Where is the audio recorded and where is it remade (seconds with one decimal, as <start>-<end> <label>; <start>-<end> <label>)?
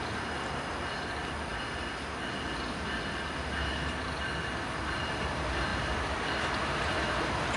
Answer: 0.0-7.6 recorded